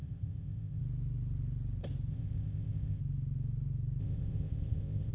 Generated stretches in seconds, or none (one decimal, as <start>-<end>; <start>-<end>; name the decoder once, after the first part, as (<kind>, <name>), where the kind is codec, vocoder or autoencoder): 0.0-0.8 (codec, ZipCodec); 2.1-3.0; 4.0-5.1